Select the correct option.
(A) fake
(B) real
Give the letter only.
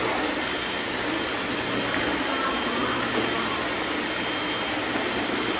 B